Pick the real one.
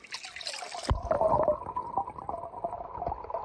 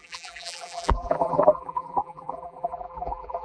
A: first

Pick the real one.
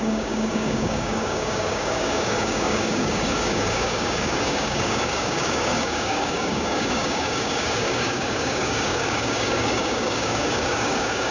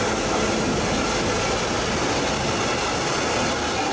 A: second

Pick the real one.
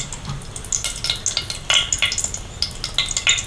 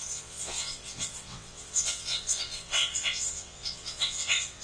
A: first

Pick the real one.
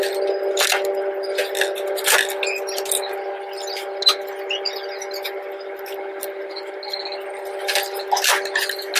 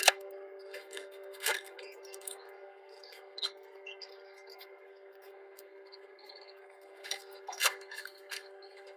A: first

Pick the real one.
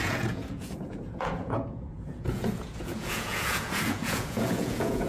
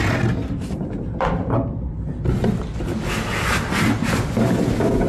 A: second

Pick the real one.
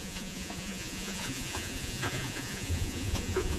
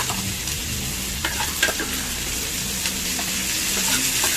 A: second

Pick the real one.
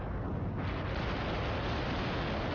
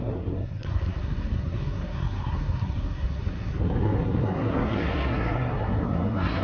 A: first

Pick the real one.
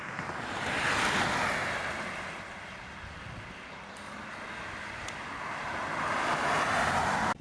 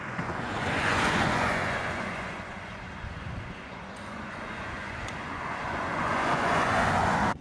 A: first